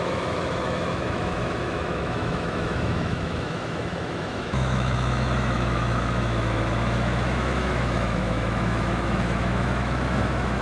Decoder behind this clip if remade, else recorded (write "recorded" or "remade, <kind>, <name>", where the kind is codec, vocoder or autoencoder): remade, autoencoder, DAC-VAE